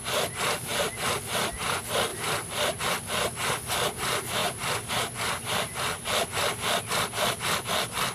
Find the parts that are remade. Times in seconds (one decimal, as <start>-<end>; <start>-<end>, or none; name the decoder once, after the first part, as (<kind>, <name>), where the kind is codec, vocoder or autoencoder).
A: none